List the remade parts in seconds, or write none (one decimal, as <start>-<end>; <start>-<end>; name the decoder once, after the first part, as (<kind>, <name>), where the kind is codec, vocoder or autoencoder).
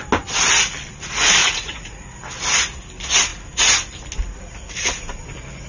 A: 1.4-2.0 (vocoder, Vocos)